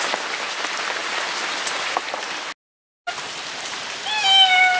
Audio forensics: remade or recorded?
recorded